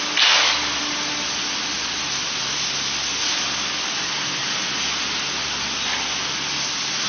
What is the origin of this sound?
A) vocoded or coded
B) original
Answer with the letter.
B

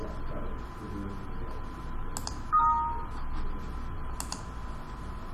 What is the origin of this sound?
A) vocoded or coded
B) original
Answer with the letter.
B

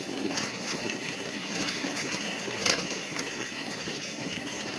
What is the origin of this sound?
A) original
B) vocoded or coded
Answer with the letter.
B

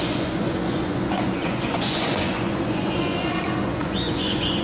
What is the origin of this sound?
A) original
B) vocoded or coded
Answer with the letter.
B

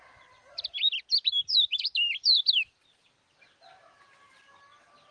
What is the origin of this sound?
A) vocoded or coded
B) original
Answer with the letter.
A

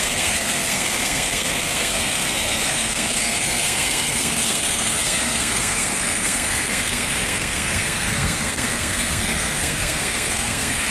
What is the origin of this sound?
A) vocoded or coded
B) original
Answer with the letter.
A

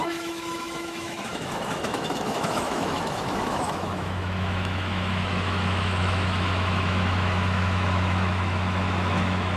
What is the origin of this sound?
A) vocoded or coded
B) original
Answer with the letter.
A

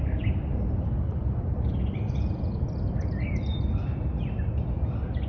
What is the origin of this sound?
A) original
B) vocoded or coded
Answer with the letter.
A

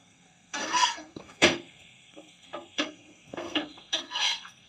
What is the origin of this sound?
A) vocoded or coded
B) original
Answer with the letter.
A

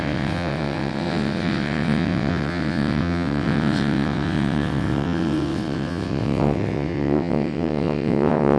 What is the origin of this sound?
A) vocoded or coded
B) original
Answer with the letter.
A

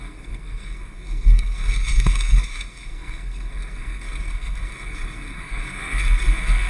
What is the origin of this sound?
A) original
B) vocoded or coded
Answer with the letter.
B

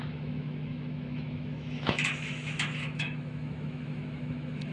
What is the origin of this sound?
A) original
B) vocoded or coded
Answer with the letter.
B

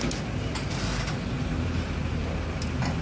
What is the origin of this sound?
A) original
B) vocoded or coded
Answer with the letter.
A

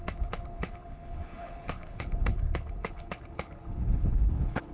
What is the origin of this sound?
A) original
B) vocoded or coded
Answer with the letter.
B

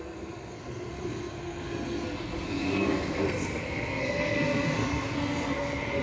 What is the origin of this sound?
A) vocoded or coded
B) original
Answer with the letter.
A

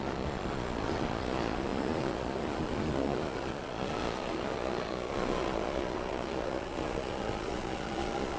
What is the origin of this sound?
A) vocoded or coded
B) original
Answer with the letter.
A